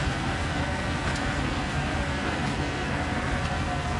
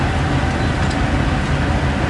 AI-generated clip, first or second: first